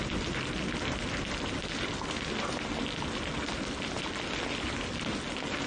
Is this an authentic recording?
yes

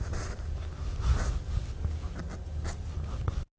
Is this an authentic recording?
yes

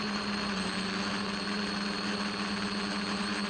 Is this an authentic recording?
yes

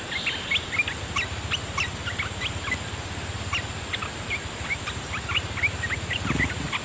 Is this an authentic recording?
yes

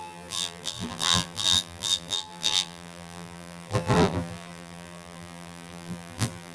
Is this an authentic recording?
no